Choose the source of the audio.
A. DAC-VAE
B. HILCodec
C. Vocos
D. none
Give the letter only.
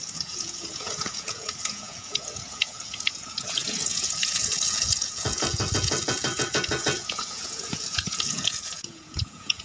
C